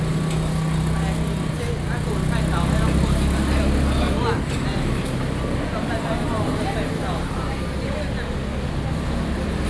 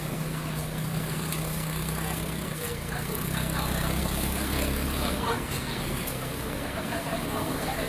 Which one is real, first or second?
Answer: first